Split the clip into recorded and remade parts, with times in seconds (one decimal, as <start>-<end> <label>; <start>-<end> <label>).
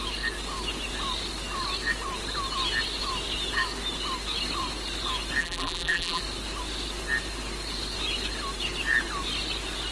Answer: 0.0-5.4 recorded; 5.4-6.2 remade; 6.2-9.9 recorded